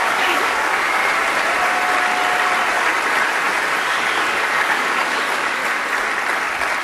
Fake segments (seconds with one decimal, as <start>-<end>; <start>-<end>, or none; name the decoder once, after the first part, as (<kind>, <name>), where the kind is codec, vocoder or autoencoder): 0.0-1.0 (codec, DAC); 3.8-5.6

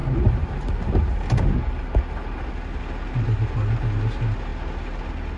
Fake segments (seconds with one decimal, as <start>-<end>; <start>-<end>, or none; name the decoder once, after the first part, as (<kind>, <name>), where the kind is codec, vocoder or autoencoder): none

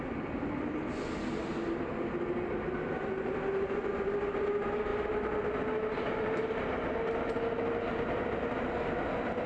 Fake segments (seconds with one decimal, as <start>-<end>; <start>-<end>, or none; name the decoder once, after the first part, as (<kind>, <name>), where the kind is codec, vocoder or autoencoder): none

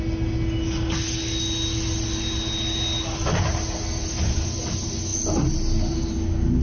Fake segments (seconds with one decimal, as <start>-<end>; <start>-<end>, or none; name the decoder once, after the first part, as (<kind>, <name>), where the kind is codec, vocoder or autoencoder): none

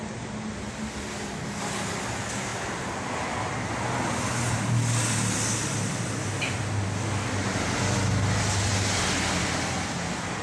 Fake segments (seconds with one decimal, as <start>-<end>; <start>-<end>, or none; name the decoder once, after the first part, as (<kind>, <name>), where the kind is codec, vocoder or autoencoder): none